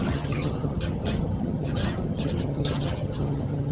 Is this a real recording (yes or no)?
no